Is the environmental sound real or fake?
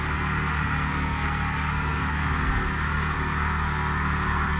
fake